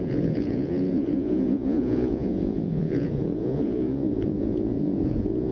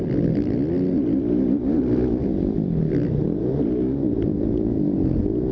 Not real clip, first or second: first